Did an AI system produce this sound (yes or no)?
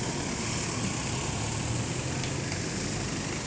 no